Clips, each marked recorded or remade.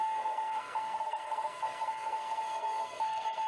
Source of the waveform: remade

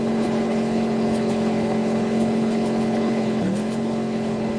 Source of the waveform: remade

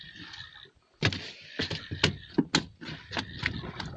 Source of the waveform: recorded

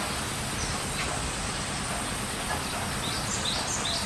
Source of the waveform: recorded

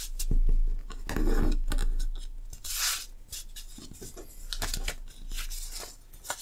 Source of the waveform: recorded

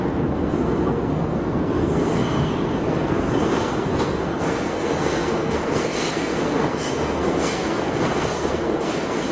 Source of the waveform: remade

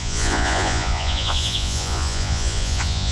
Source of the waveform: remade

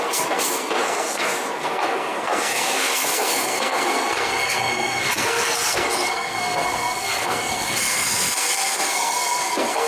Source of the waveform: remade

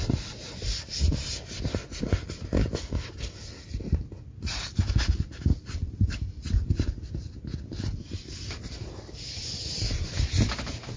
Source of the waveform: recorded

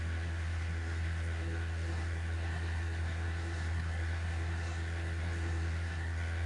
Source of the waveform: remade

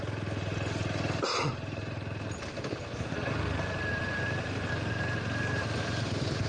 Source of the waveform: recorded